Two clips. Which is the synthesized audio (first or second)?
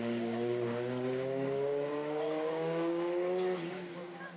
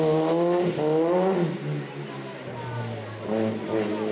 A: first